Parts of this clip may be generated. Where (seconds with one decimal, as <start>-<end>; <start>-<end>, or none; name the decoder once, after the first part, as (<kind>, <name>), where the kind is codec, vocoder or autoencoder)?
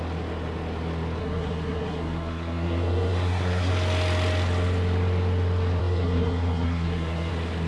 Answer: 1.2-3.7 (codec, SNAC); 5.8-7.3